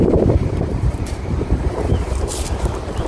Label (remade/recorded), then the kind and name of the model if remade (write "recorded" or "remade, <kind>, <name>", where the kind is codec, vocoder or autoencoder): remade, vocoder, BigVGAN v2